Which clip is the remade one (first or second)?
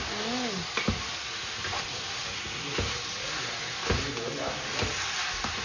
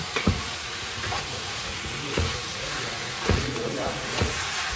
second